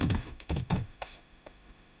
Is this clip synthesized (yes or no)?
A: yes